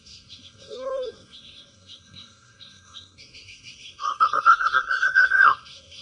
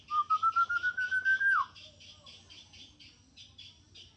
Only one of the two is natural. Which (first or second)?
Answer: second